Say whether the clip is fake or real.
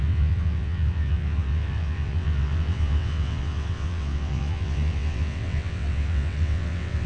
fake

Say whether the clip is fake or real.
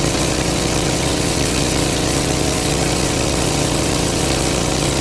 fake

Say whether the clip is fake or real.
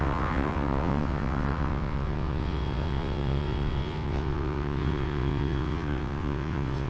fake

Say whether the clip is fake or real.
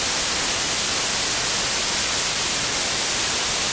real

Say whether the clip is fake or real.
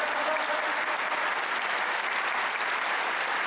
real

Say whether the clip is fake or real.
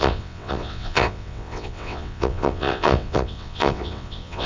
fake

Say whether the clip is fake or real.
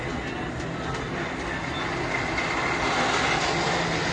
real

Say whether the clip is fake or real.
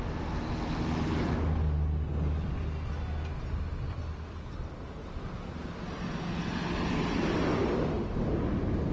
real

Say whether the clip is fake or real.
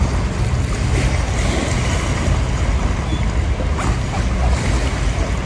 real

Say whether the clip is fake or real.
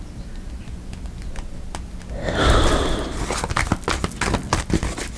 real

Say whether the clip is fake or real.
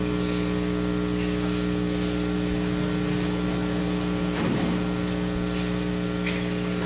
real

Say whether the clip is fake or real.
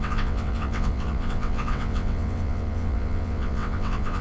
fake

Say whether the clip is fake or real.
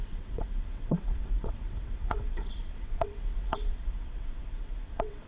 fake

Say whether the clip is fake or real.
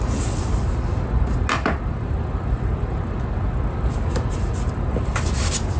real